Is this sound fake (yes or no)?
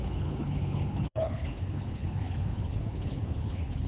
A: yes